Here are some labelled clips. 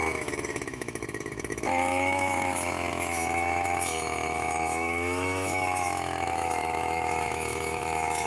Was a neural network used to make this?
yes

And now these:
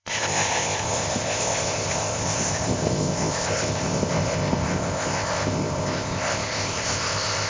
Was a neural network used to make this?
yes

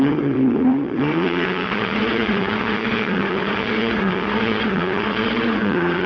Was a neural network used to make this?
yes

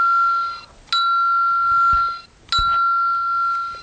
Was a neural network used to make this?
no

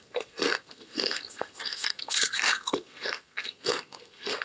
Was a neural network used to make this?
yes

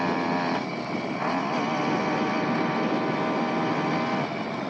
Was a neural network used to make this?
no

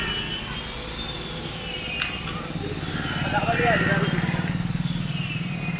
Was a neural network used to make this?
no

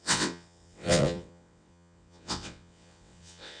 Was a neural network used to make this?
yes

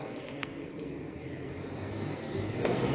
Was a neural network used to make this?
yes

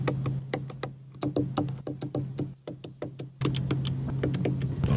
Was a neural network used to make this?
no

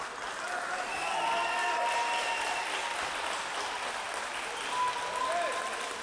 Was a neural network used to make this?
no